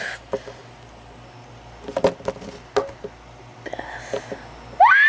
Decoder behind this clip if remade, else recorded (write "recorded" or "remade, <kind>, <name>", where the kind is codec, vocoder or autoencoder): recorded